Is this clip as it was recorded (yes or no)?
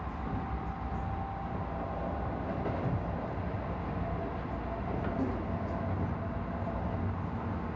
yes